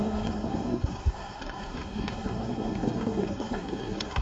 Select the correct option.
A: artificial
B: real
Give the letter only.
A